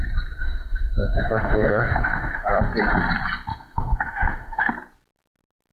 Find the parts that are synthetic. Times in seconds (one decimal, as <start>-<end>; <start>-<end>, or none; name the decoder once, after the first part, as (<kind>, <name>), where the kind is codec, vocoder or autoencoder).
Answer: 0.4-2.5 (autoencoder, DAC-VAE); 3.5-4.7